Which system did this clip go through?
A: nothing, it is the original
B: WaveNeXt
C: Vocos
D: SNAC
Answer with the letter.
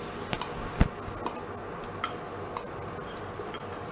A